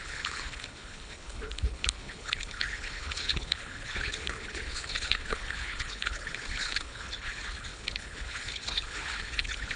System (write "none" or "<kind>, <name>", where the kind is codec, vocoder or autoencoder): codec, HILCodec